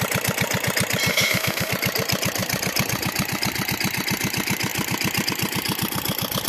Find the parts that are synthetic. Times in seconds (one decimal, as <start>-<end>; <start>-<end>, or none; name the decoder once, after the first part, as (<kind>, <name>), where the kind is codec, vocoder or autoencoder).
1.1-1.7 (autoencoder, DAC-VAE)